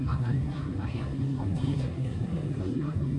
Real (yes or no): no